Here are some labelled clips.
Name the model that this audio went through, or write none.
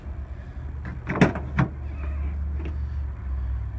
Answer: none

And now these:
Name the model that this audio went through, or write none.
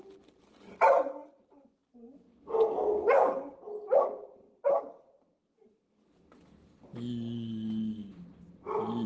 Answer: none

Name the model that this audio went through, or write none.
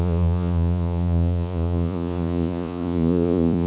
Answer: vocoder, Vocos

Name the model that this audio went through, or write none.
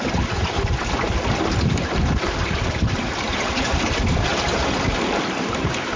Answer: none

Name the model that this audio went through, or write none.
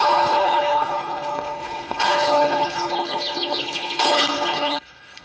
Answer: codec, HILCodec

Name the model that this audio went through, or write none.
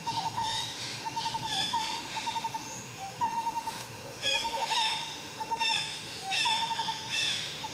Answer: autoencoder, DAC-VAE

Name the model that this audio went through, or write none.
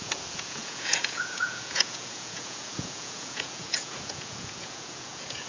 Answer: vocoder, Vocos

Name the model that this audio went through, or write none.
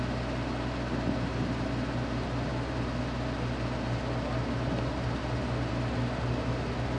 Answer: none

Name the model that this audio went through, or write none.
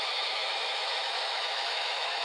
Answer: autoencoder, DAC-VAE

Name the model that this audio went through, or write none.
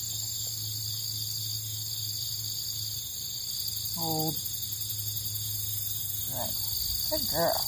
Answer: none